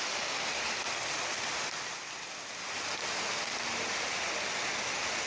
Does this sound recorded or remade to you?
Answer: recorded